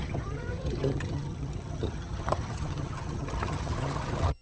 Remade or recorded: remade